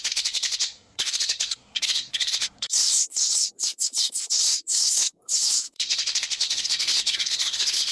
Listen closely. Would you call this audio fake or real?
fake